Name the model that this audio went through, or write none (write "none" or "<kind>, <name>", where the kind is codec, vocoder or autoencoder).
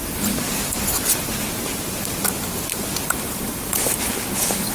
vocoder, BigVGAN v2